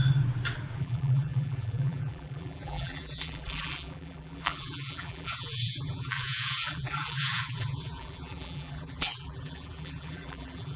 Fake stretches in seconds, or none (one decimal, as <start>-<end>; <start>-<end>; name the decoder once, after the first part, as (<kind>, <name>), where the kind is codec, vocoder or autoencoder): 0.8-10.8 (vocoder, BigVGAN v2)